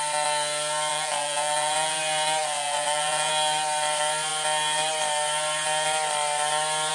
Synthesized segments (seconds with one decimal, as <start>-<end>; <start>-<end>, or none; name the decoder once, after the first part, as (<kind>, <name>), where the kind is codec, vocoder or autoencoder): 0.9-2.0 (vocoder, Vocos); 2.4-3.3